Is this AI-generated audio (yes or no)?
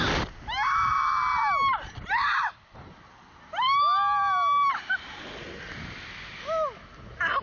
no